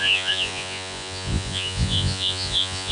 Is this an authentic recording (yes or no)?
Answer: no